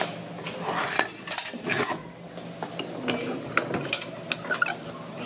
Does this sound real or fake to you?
real